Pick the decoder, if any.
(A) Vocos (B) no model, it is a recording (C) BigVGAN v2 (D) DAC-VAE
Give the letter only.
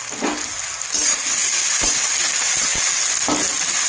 B